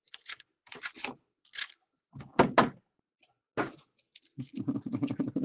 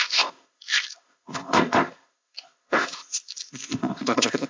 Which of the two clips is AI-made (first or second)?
second